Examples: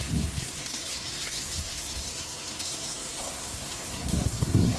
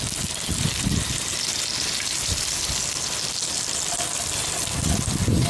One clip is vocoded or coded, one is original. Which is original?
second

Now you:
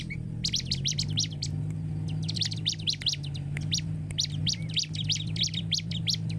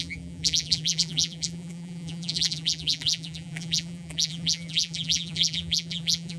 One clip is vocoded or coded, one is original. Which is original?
first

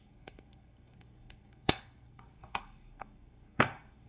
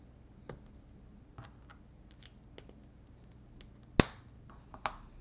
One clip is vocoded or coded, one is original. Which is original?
second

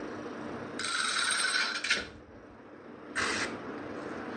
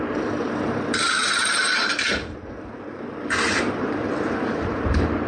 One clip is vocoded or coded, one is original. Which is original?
first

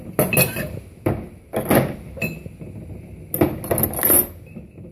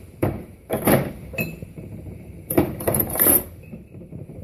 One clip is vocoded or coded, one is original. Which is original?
first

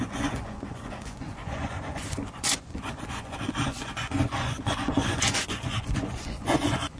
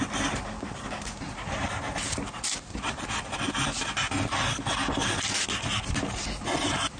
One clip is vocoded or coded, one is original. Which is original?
second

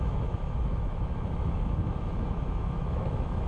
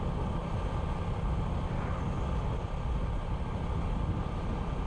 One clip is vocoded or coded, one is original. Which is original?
second